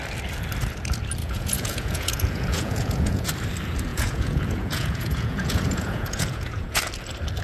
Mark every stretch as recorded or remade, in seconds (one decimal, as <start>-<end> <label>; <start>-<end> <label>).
0.0-1.2 recorded; 1.2-3.3 remade; 3.3-3.9 recorded; 3.9-6.8 remade; 6.8-7.4 recorded